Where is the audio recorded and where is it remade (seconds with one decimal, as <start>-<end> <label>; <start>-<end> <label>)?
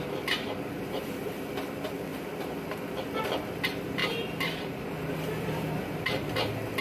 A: 0.0-4.0 recorded; 4.0-6.3 remade; 6.3-6.8 recorded